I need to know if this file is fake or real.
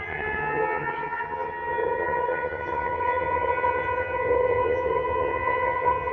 fake